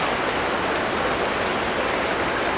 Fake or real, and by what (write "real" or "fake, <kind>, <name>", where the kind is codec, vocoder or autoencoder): real